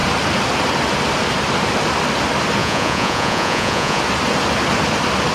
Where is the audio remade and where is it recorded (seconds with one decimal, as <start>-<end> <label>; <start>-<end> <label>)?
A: 0.0-2.6 recorded; 2.6-4.0 remade; 4.0-5.3 recorded